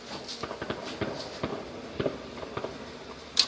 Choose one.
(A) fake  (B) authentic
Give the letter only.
B